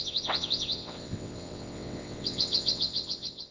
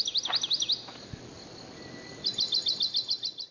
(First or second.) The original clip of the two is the second